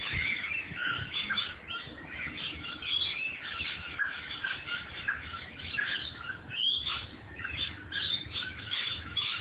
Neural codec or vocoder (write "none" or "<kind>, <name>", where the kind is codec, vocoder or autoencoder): autoencoder, DAC-VAE